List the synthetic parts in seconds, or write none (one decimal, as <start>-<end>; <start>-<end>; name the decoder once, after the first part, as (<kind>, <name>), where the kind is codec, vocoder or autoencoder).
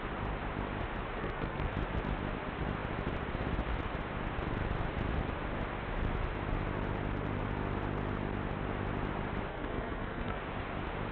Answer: 1.2-1.7 (codec, SNAC); 9.5-10.4